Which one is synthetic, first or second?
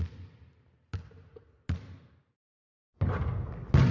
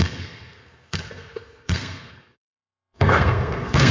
second